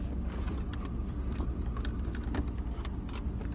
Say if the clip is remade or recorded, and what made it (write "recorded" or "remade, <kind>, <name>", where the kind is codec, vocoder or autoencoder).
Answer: recorded